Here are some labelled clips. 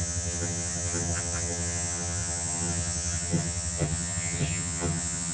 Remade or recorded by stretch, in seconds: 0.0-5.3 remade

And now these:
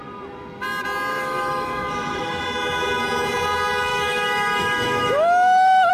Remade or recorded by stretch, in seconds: 0.0-1.1 recorded; 1.1-2.4 remade; 2.4-3.9 recorded; 3.9-5.9 remade